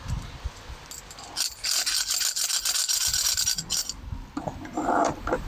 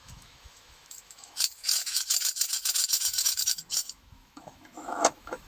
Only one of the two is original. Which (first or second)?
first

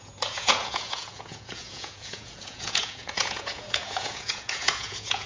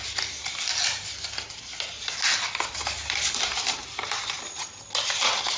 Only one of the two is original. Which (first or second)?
second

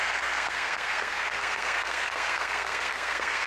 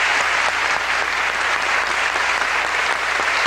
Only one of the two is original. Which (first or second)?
second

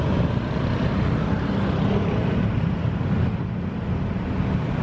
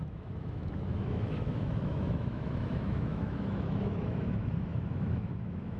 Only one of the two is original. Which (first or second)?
first